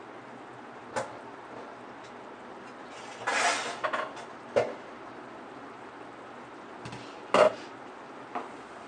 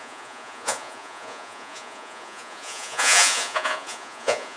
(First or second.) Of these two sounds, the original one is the first